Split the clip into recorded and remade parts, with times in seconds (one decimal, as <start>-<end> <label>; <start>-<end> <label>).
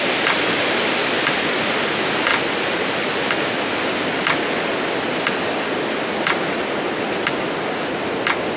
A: 0.0-8.6 recorded